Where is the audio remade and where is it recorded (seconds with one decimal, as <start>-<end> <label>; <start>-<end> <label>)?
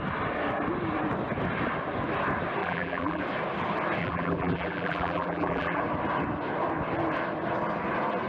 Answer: 0.0-2.6 recorded; 2.6-3.2 remade; 3.2-4.0 recorded; 4.0-5.8 remade; 5.8-8.3 recorded